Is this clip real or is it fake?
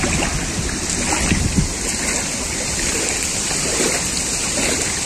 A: real